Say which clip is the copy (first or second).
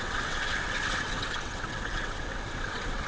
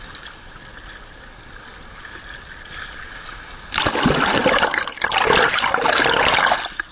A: first